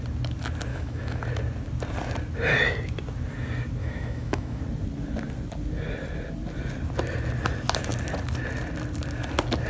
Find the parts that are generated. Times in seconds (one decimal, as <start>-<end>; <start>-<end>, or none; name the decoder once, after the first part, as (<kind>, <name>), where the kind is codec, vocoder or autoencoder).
0.7-1.2 (autoencoder, DAC-VAE); 3.8-4.6